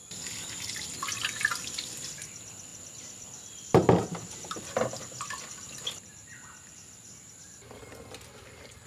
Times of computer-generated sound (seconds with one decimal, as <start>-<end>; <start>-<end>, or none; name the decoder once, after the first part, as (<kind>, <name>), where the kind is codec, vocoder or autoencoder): none